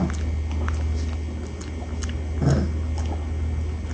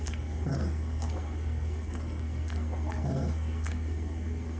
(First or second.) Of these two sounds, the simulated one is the second